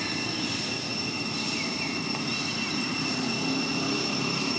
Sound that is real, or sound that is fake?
real